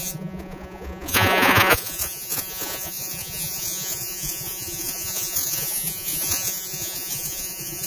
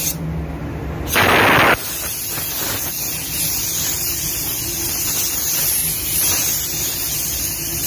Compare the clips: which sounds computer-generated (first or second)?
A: first